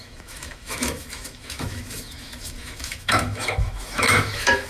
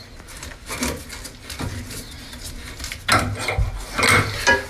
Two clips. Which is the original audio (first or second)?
second